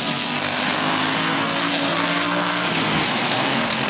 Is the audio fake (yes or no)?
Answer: yes